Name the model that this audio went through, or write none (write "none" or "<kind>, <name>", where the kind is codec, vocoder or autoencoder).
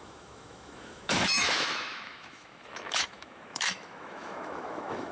autoencoder, DAC-VAE